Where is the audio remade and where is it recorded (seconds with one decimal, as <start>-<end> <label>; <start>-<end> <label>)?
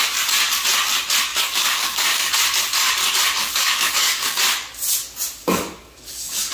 0.0-1.3 recorded; 1.3-2.3 remade; 2.3-3.4 recorded; 3.4-4.4 remade; 4.4-5.4 recorded; 5.4-6.5 remade